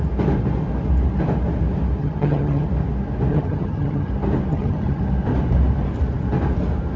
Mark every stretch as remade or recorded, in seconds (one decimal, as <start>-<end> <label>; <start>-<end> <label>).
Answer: 0.0-2.0 recorded; 2.0-2.7 remade; 2.7-3.3 recorded; 3.3-4.1 remade; 4.1-4.5 recorded; 4.5-5.0 remade; 5.0-7.0 recorded